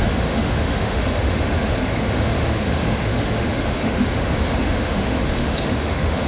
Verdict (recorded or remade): remade